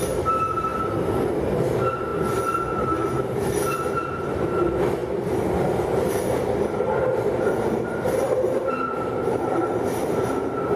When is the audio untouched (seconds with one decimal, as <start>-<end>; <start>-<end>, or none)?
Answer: 5.0-5.8; 10.0-10.8